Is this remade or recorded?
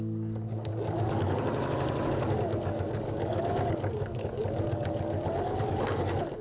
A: remade